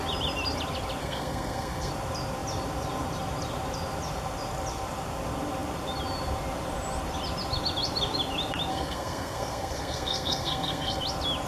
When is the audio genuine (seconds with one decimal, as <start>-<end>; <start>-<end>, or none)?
0.0-1.0; 1.9-8.7; 11.0-11.5